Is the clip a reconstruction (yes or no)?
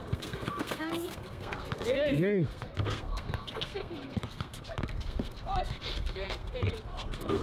yes